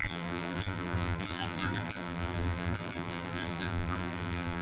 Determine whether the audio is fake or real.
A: fake